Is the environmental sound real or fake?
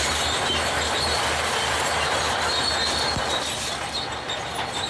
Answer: real